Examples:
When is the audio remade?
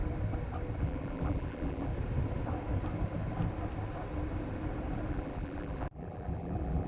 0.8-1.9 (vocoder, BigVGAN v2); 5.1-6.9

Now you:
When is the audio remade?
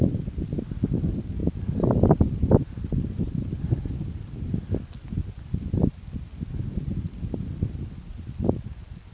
1.4-4.8 (vocoder, BigVGAN v2)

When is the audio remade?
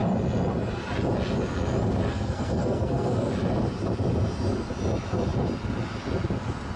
2.1-3.3 (codec, SNAC)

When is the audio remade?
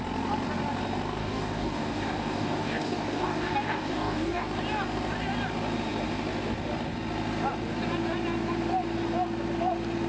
1.2-4.4 (codec, DAC)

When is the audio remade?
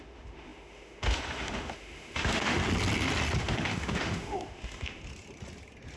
0.0-2.6 (autoencoder, DAC-VAE); 3.4-5.0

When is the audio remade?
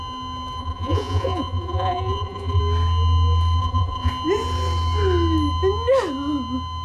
0.6-2.6 (vocoder, Vocos); 3.6-4.1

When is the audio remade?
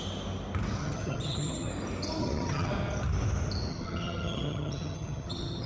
0.8-1.7 (vocoder, HiFi-GAN); 2.2-2.7; 3.7-5.7